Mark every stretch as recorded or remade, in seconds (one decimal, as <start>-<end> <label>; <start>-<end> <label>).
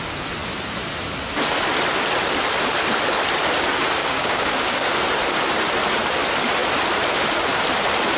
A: 0.0-4.0 recorded; 4.0-4.9 remade; 4.9-8.2 recorded